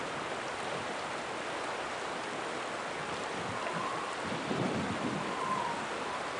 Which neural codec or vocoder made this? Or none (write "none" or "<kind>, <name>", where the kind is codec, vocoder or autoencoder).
none